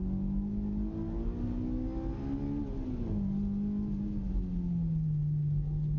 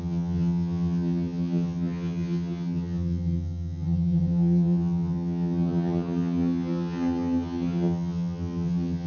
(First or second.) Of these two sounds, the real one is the first